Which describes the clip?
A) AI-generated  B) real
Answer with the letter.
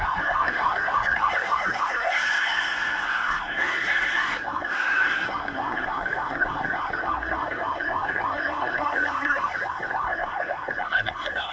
A